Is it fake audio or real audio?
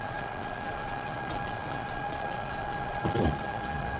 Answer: fake